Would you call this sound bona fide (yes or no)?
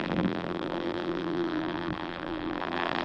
no